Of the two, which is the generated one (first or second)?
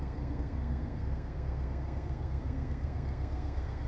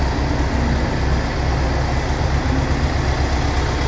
first